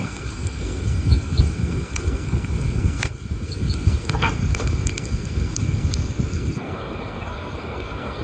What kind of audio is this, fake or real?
fake